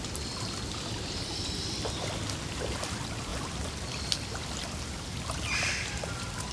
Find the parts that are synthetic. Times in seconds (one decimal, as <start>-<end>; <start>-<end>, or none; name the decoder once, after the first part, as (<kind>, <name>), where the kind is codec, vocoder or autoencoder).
none